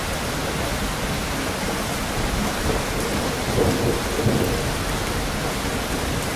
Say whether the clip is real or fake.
real